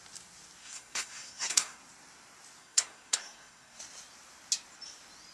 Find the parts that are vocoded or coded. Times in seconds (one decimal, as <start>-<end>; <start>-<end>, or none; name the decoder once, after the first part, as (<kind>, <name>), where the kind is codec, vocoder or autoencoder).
0.6-1.8 (codec, SNAC); 2.6-3.8